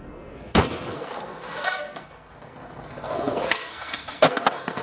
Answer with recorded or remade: remade